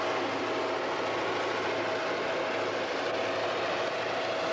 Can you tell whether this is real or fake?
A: real